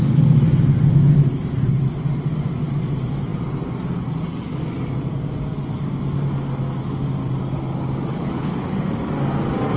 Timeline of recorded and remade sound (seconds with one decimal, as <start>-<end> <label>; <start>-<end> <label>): 0.0-8.1 recorded; 8.1-8.7 remade; 8.7-9.8 recorded

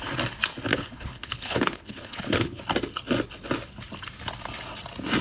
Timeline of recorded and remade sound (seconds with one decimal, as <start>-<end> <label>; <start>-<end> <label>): 0.0-0.7 recorded; 0.7-2.6 remade; 2.6-5.2 recorded

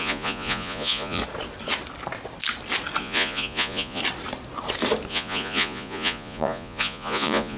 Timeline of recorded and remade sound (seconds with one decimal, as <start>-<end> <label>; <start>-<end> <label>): 0.0-1.2 remade; 1.2-3.0 recorded; 3.0-4.0 remade; 4.0-5.1 recorded; 5.1-7.6 remade

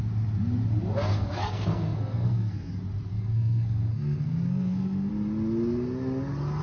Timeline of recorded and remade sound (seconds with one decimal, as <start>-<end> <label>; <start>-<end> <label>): 0.0-1.1 recorded; 1.1-2.7 remade; 2.7-3.1 recorded; 3.1-5.1 remade; 5.1-6.6 recorded